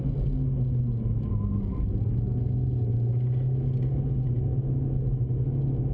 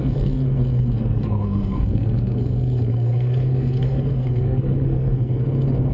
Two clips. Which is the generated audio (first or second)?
second